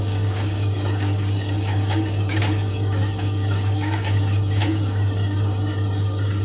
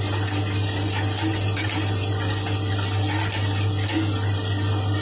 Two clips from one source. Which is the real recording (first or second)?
second